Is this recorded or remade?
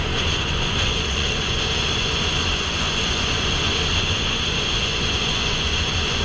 remade